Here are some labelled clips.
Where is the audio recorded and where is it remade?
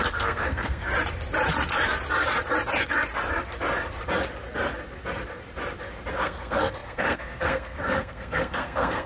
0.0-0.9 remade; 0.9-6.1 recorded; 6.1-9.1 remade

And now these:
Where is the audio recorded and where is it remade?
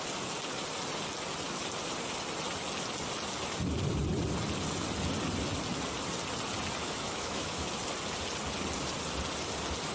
0.0-6.8 recorded; 6.8-7.7 remade; 7.7-9.9 recorded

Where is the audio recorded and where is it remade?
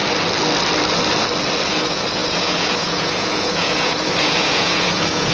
0.0-1.7 recorded; 1.7-5.3 remade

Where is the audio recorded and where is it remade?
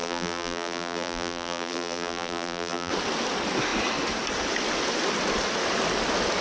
0.0-2.9 remade; 2.9-6.4 recorded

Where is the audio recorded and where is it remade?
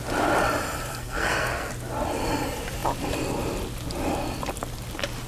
0.0-0.9 recorded; 0.9-1.7 remade; 1.7-5.3 recorded